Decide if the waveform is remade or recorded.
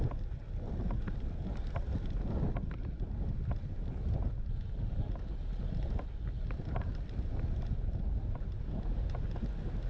recorded